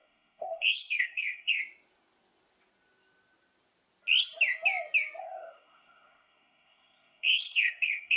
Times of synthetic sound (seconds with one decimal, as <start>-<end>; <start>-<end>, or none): 0.0-1.6; 5.2-8.2